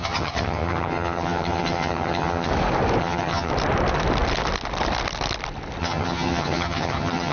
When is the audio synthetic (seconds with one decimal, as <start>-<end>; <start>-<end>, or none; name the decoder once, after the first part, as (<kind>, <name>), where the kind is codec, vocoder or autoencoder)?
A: 0.0-2.5 (vocoder, HiFi-GAN); 3.0-3.5; 5.8-7.3